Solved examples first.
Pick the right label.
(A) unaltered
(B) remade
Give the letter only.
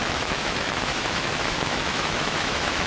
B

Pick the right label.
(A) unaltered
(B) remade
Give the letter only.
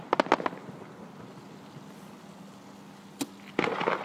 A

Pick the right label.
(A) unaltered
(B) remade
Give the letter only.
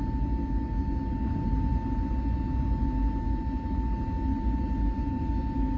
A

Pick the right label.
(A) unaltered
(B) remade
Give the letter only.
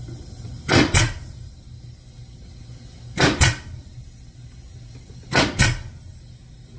A